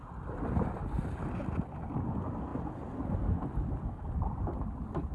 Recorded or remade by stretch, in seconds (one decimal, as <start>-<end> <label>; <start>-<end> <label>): 0.0-5.1 recorded